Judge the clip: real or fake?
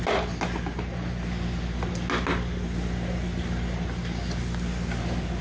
real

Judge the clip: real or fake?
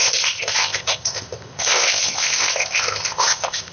fake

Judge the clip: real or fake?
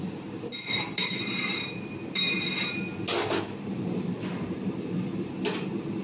fake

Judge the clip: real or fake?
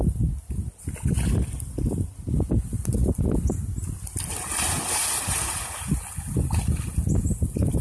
real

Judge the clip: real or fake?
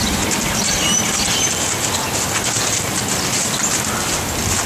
real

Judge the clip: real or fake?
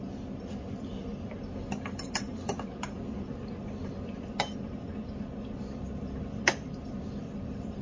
real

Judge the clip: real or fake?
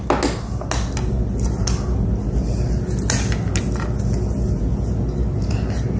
real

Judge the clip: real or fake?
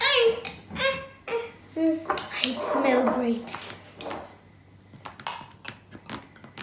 real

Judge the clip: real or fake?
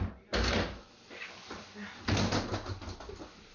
real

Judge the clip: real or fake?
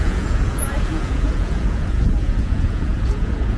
fake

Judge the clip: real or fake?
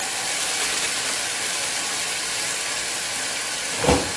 real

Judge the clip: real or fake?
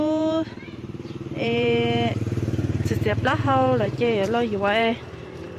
fake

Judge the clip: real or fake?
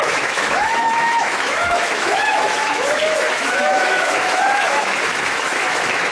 fake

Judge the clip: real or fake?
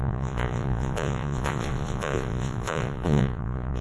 fake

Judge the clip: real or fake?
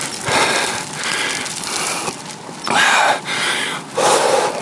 real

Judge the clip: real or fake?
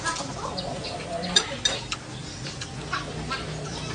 real